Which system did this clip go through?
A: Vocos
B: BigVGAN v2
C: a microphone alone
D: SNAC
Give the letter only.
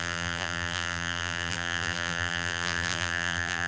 B